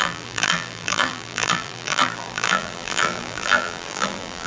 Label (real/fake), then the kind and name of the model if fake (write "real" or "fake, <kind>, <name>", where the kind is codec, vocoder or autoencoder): fake, vocoder, BigVGAN v2